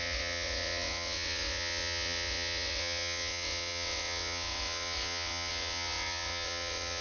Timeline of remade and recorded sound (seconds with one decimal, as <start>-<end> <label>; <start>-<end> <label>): 0.0-7.0 remade